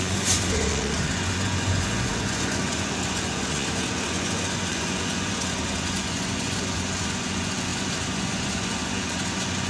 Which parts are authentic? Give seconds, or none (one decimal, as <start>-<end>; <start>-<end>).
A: none